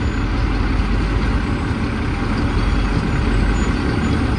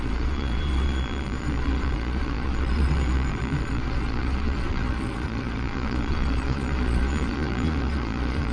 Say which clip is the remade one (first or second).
second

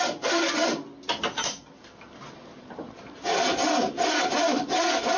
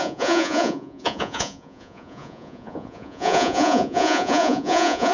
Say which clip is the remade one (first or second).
second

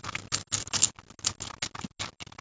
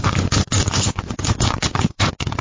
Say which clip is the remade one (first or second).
second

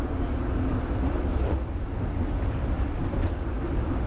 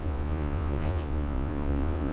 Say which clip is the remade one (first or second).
second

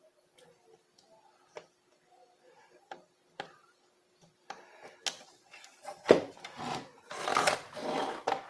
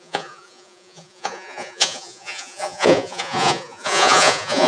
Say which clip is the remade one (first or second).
second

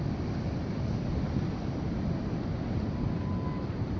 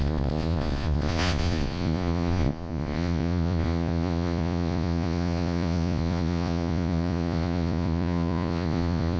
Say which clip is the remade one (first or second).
second